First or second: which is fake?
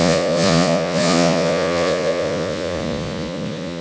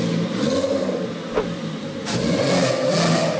first